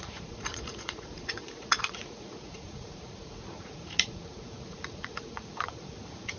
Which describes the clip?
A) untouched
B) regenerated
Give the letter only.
B